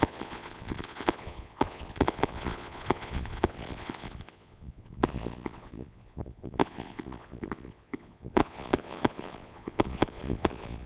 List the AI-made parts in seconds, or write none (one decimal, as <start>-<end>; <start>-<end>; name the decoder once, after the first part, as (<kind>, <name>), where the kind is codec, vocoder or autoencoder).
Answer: 0.0-10.9 (vocoder, Vocos)